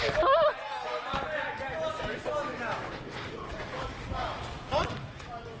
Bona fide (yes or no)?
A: yes